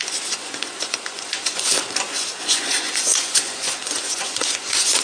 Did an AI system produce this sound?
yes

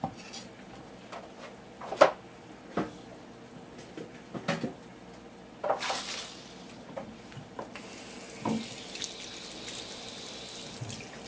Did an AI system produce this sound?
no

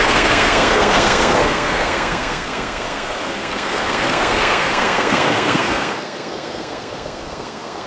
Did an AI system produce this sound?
yes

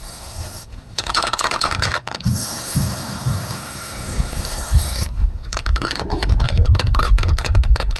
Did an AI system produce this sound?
yes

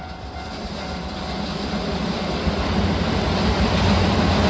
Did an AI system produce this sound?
no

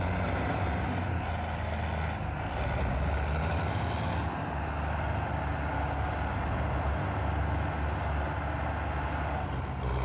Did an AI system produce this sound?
no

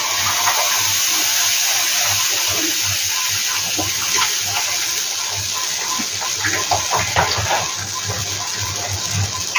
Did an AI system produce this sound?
no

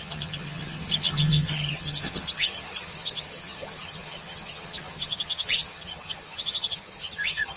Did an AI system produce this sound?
yes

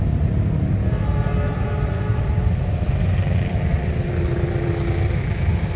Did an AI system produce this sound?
no